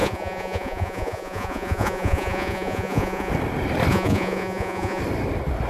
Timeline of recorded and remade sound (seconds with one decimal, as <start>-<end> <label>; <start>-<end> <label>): 0.0-3.3 remade; 3.3-3.9 recorded; 3.9-5.0 remade; 5.0-5.7 recorded